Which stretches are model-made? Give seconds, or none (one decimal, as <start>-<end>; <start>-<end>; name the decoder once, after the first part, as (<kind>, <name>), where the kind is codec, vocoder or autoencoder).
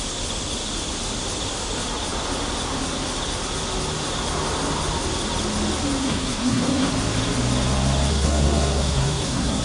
6.0-6.9 (codec, SNAC); 8.1-9.6